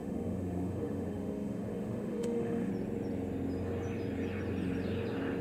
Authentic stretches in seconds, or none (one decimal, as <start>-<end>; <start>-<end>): 2.7-5.4